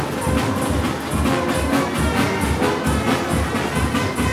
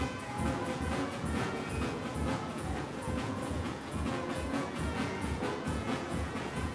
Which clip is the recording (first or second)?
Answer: first